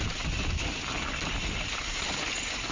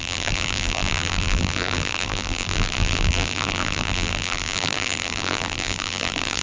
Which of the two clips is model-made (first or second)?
second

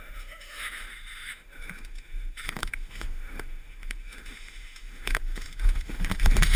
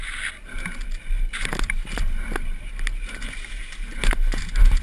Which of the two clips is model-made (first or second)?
first